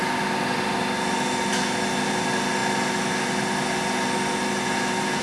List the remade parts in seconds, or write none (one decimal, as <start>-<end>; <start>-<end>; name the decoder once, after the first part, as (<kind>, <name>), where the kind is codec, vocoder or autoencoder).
none